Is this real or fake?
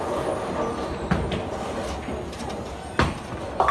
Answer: real